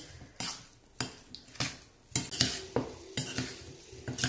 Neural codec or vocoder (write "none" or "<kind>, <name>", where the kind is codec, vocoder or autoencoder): none